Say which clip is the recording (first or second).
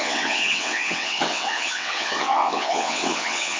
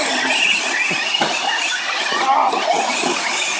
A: second